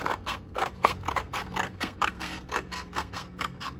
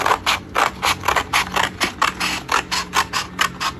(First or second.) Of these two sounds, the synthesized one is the first